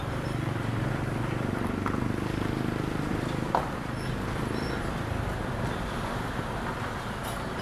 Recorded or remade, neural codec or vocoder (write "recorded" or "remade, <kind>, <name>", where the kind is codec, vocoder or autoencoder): recorded